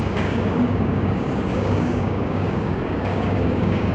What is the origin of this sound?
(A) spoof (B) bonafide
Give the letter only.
A